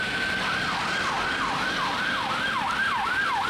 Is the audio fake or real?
real